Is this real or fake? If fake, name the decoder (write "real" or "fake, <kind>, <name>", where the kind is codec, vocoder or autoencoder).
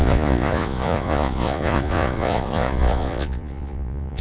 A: fake, vocoder, Vocos